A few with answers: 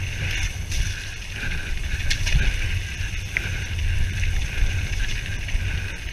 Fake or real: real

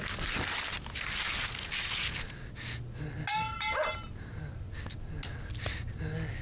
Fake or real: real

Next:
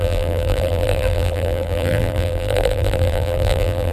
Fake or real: fake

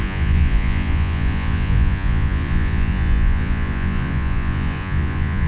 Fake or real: fake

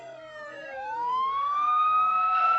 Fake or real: fake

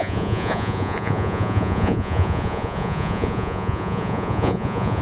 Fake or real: fake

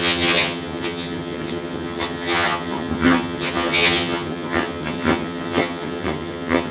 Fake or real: fake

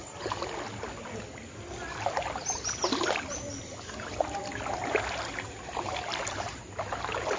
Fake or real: real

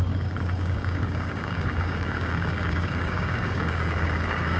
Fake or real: fake